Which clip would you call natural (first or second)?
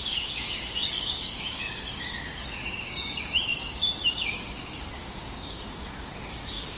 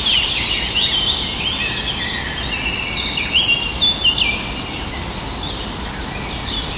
second